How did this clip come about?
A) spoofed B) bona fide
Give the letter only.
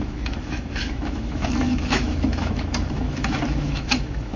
A